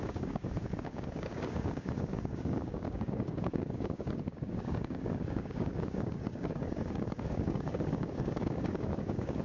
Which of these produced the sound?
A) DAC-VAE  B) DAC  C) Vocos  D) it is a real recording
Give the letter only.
B